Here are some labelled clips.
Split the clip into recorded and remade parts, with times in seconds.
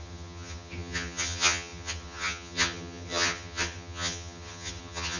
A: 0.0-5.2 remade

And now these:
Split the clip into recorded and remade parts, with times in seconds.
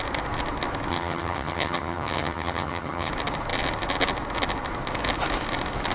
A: 0.0-0.9 recorded; 0.9-3.1 remade; 3.1-5.9 recorded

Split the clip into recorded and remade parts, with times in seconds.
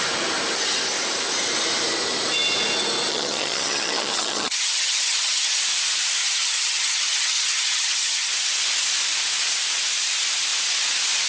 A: 0.0-3.1 recorded; 3.1-5.6 remade; 5.6-6.2 recorded; 6.2-8.3 remade; 8.3-11.3 recorded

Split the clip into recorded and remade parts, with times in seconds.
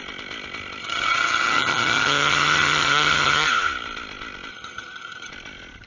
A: 0.0-0.8 recorded; 0.8-3.5 remade; 3.5-4.5 recorded; 4.5-5.3 remade; 5.3-5.9 recorded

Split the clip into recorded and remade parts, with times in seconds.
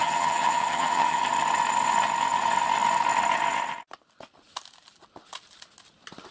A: 0.0-1.2 remade; 1.2-6.3 recorded